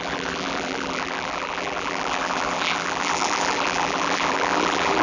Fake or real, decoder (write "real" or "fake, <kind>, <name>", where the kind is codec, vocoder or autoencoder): fake, vocoder, BigVGAN v2